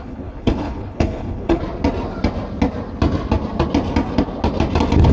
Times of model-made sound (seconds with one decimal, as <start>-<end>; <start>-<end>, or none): 0.0-1.6